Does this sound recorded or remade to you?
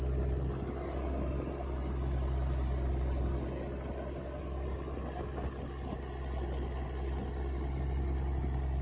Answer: recorded